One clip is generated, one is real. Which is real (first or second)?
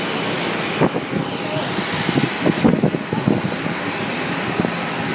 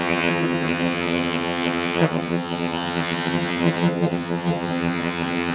first